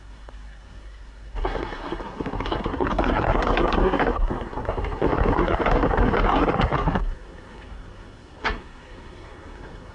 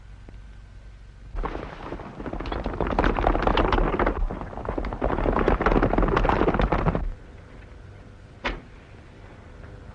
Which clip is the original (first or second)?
second